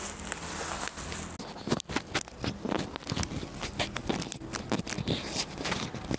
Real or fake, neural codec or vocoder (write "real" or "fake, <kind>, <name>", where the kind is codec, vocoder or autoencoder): real